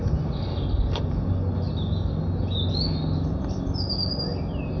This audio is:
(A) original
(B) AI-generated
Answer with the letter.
A